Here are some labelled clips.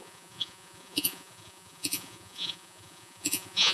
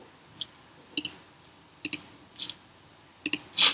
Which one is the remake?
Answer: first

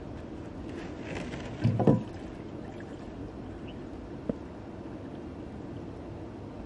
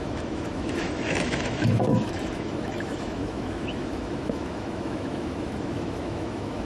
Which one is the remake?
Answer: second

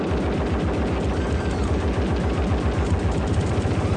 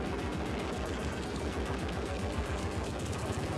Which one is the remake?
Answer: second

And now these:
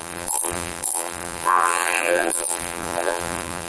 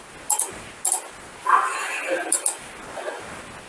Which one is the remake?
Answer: first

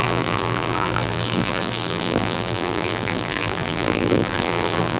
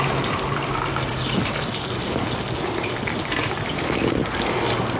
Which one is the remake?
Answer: first